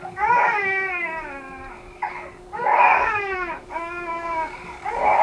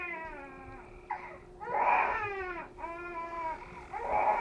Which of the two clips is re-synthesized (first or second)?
first